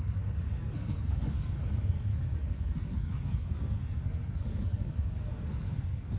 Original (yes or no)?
no